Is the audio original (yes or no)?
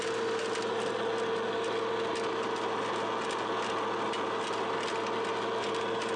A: yes